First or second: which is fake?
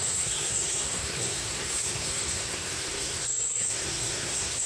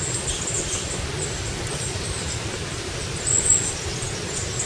first